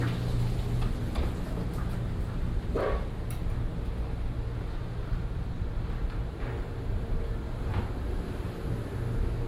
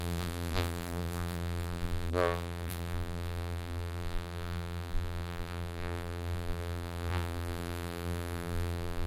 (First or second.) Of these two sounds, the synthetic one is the second